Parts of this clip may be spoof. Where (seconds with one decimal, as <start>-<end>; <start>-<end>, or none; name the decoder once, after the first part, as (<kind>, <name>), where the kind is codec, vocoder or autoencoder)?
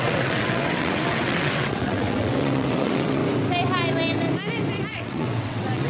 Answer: 0.0-3.2 (vocoder, WaveNeXt); 4.9-5.9